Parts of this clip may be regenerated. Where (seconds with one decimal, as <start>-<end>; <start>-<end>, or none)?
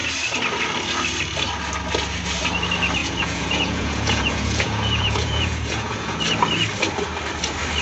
3.0-6.2